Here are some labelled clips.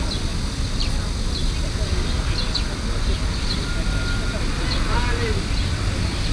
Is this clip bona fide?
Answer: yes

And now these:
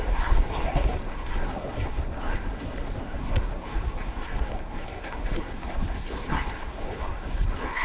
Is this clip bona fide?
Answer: no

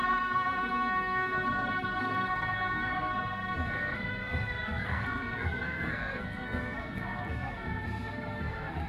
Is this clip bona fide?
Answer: no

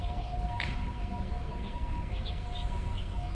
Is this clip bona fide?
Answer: no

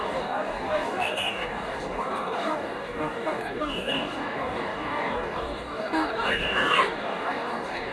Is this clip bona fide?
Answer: no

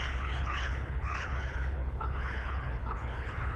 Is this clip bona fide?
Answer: no